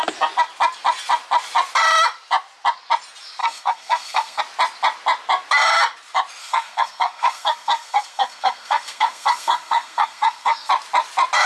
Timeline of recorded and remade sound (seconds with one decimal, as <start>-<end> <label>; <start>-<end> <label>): 0.0-3.4 recorded; 3.4-4.4 remade; 4.4-6.4 recorded; 6.4-10.7 remade; 10.7-11.5 recorded